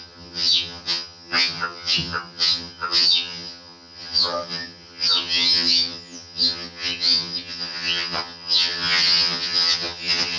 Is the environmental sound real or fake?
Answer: fake